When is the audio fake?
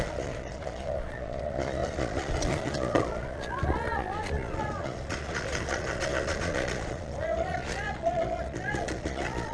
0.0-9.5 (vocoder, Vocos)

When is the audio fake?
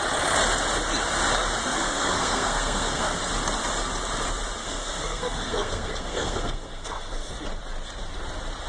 1.6-3.2 (codec, SNAC); 4.6-7.3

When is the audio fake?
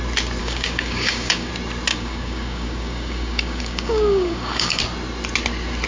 0.4-1.5 (codec, DAC); 1.9-4.8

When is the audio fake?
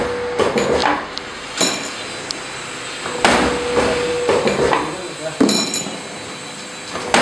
0.8-1.6 (vocoder, BigVGAN v2)